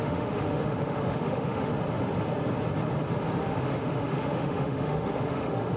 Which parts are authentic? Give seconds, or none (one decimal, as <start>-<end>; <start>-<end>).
1.7-3.4